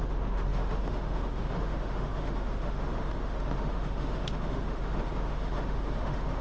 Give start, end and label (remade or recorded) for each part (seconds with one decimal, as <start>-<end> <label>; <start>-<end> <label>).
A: 0.0-6.4 remade